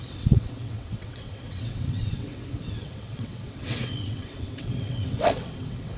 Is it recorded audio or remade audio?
remade